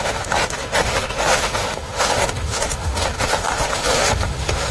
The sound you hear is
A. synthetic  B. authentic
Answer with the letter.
A